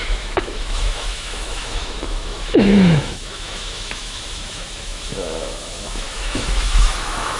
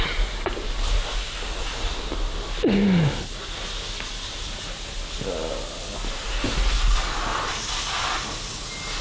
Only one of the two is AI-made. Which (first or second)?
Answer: first